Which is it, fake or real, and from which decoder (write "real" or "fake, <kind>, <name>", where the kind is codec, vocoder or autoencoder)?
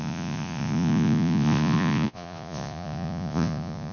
fake, vocoder, Vocos